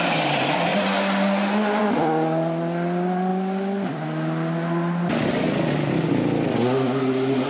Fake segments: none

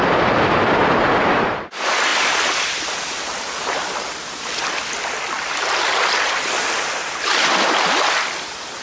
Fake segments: 0.0-8.8 (vocoder, BigVGAN v2)